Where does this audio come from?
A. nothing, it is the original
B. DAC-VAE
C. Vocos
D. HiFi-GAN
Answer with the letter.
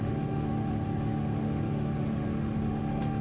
B